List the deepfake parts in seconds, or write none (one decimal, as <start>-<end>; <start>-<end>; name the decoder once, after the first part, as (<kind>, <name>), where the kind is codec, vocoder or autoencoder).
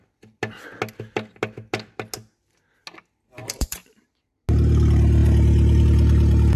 3.4-4.3 (vocoder, BigVGAN v2)